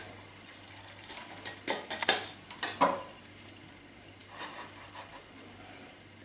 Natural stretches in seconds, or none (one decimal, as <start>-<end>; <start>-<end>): 0.0-6.2